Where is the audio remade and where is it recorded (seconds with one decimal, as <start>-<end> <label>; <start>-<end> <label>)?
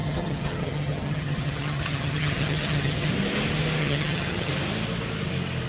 0.0-3.1 remade; 3.1-3.8 recorded; 3.8-4.5 remade; 4.5-5.7 recorded